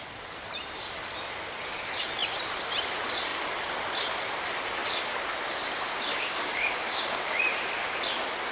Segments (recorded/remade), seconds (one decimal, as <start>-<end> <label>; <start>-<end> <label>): 0.0-6.1 recorded; 6.1-7.2 remade; 7.2-8.5 recorded